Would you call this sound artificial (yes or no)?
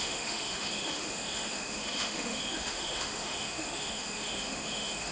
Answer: yes